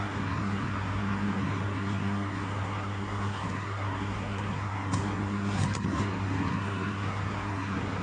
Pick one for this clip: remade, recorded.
remade